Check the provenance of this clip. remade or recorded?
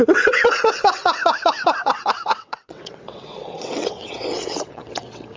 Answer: remade